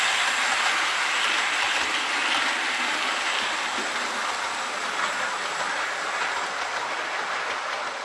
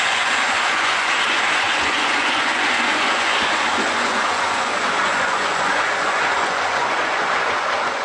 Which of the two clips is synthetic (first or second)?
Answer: second